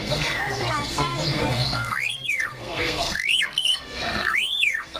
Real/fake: fake